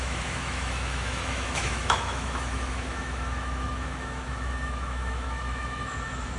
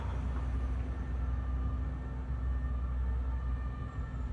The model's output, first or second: first